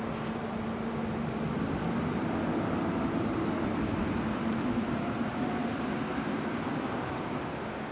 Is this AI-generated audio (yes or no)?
yes